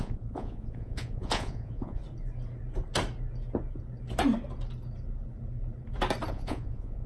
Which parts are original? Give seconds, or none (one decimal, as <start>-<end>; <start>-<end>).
2.0-6.3